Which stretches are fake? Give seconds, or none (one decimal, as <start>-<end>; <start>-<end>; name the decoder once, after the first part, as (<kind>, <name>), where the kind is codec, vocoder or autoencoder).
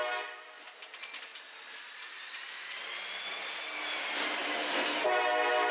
none